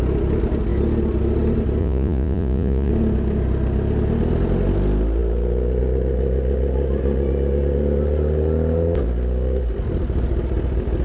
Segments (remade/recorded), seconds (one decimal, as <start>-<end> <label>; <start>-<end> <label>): 0.0-1.8 recorded; 1.8-2.9 remade; 2.9-11.0 recorded